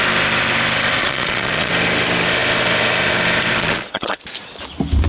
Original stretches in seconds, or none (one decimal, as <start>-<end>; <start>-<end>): 0.0-1.0; 1.7-3.6; 4.2-5.1